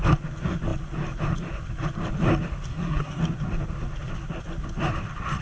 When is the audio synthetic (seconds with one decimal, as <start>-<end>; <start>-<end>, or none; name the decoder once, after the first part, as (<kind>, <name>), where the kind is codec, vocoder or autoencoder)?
2.7-3.2 (codec, SNAC)